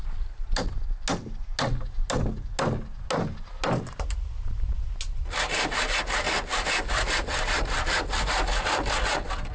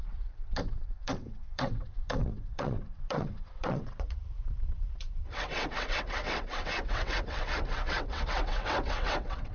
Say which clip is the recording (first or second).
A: first